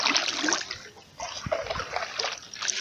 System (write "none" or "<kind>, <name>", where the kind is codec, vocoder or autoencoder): none